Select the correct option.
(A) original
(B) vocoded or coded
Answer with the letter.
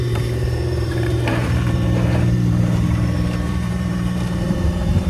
B